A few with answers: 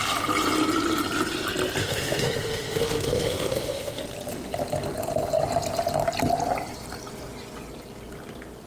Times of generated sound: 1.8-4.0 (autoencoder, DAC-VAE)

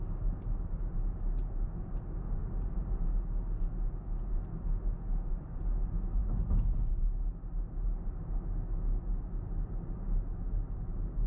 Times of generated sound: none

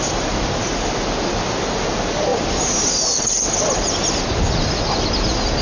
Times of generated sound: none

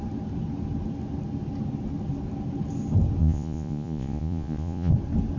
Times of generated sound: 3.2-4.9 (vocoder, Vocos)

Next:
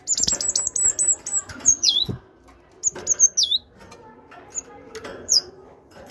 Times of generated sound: 1.3-2.1 (vocoder, Vocos); 5.1-6.1

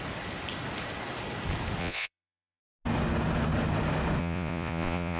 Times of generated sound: 1.8-2.6 (vocoder, Vocos); 4.2-5.2

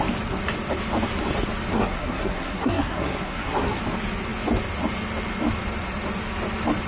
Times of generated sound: 1.7-3.8 (codec, SNAC)

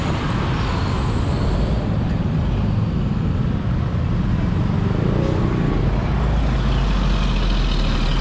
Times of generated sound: none